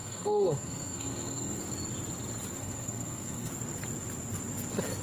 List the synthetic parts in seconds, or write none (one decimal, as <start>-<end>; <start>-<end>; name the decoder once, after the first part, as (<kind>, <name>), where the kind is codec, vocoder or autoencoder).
0.0-1.6 (codec, SNAC); 2.6-3.5